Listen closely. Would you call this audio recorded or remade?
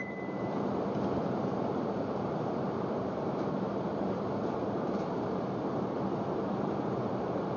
remade